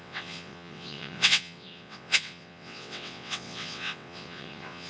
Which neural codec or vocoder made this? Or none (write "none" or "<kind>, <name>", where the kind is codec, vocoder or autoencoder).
vocoder, WaveNeXt